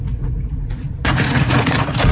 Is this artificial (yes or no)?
yes